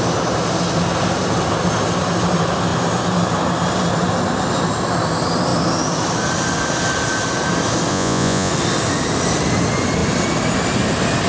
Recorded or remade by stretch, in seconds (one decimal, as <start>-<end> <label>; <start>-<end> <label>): 0.0-7.9 recorded; 7.9-8.5 remade; 8.5-11.3 recorded